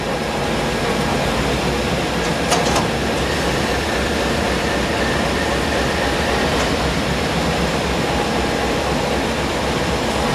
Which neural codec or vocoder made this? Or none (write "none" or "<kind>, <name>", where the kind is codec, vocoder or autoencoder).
none